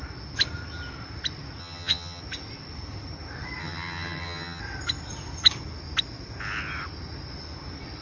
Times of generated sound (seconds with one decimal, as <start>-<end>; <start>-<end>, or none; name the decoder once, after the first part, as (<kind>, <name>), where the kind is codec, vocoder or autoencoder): 1.6-2.2 (vocoder, HiFi-GAN); 3.6-4.6